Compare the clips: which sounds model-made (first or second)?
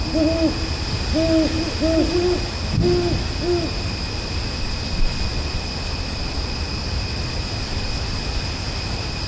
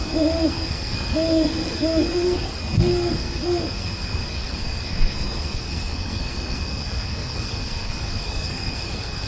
second